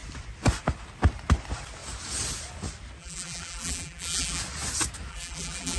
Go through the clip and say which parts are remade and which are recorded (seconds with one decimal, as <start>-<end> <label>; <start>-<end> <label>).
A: 0.0-3.0 recorded; 3.0-4.4 remade; 4.4-5.1 recorded; 5.1-5.8 remade